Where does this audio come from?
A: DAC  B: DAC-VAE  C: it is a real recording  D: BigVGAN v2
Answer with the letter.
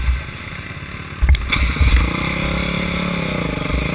C